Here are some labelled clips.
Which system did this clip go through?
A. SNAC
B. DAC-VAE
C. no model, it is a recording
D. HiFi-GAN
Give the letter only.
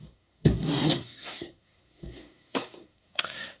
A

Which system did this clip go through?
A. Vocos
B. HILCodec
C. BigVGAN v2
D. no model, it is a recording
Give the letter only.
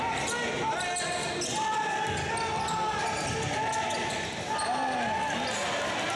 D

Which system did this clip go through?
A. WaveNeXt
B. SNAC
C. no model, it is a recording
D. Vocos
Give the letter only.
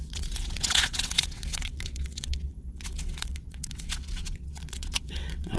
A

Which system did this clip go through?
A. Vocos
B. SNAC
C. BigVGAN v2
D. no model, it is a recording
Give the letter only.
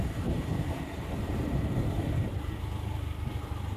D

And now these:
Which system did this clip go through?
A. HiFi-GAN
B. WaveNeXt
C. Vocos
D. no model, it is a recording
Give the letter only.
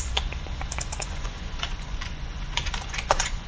C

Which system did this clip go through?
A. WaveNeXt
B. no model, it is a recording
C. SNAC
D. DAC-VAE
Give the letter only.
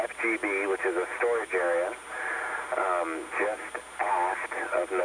B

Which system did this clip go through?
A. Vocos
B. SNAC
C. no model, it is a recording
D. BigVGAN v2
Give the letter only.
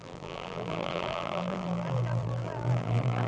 D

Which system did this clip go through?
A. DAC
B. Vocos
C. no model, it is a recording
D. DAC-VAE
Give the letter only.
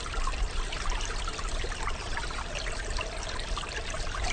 C